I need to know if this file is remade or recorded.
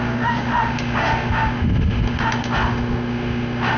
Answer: remade